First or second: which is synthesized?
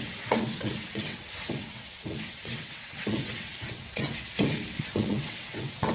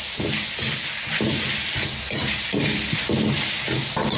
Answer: first